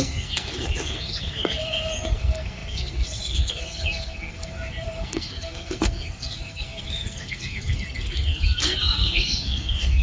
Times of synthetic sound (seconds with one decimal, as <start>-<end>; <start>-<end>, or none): 0.0-10.0